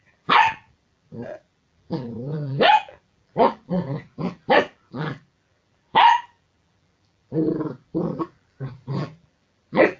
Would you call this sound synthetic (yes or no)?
yes